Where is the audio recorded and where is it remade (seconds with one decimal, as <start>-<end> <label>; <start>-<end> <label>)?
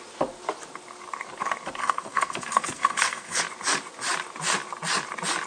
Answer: 0.0-1.8 recorded; 1.8-3.4 remade; 3.4-5.5 recorded